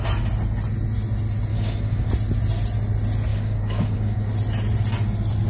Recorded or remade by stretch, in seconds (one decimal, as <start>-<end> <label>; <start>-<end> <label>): 0.0-1.5 recorded; 1.5-2.1 remade; 2.1-3.3 recorded; 3.3-4.2 remade; 4.2-5.5 recorded